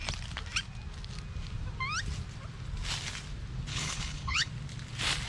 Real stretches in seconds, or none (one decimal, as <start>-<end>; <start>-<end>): 0.0-3.7; 4.5-5.3